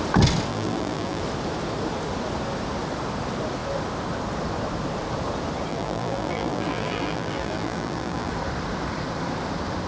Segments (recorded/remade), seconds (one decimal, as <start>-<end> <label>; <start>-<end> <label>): 0.0-0.5 recorded; 0.5-1.2 remade; 1.2-5.7 recorded; 5.7-8.3 remade; 8.3-9.9 recorded